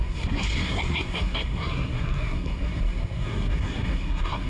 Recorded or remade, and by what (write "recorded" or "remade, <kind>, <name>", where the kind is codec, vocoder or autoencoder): remade, codec, SNAC